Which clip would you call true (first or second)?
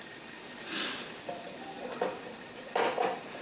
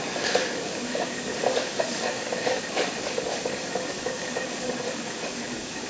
first